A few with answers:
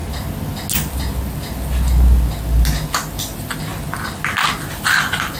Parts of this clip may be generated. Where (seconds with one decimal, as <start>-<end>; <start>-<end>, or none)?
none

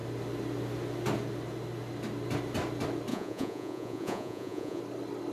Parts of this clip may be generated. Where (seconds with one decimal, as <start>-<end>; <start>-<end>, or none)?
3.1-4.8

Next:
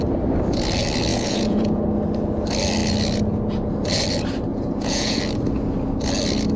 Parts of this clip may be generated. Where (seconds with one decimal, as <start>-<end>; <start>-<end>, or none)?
1.1-1.8; 4.5-5.2